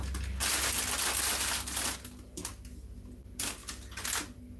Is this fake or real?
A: real